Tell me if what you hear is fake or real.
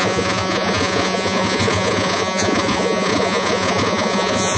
fake